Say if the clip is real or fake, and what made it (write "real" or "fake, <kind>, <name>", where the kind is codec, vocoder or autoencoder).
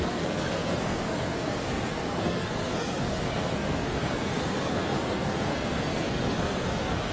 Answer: fake, codec, SNAC